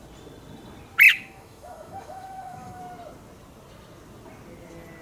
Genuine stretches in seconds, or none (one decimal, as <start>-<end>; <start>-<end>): 0.0-1.1; 2.8-5.0